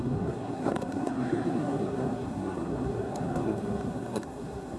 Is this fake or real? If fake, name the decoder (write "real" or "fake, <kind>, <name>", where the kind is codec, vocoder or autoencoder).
fake, codec, SNAC